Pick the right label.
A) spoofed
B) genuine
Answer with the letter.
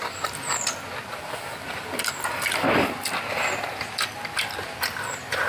B